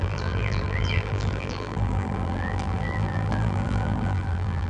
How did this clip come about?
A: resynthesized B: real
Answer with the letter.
A